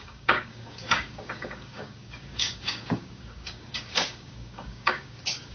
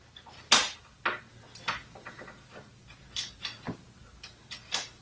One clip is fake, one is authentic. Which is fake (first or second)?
first